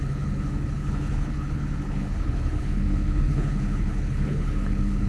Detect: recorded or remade remade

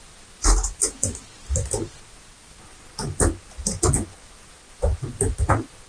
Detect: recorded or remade recorded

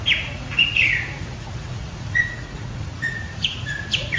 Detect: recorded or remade remade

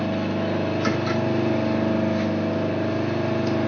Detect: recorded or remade recorded